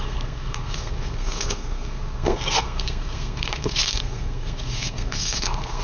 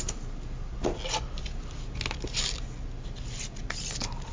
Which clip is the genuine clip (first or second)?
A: second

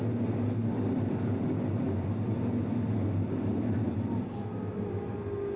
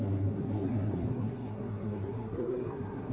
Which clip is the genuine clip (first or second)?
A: first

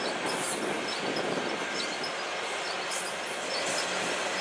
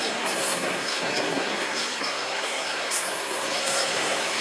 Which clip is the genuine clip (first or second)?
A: first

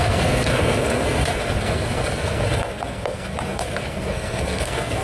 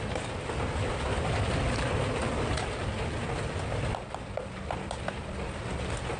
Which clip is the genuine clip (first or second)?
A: second